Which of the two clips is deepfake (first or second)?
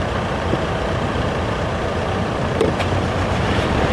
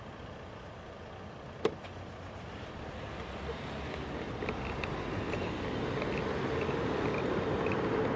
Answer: first